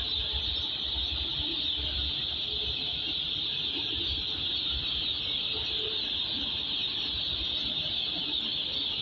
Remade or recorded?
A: recorded